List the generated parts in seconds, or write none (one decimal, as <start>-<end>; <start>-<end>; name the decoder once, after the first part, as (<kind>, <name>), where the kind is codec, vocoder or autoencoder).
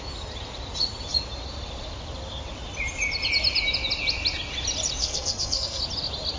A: 5.0-5.8 (codec, SNAC)